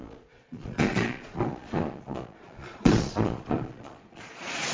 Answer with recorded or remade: remade